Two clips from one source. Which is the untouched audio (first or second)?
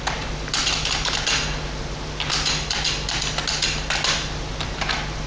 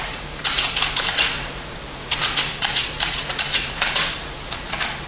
first